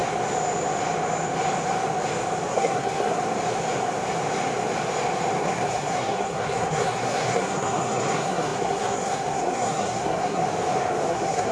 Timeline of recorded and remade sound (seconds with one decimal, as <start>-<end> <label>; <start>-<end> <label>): 0.0-2.5 recorded; 2.5-3.2 remade; 3.2-5.4 recorded; 5.4-10.4 remade; 10.4-11.1 recorded; 11.1-11.5 remade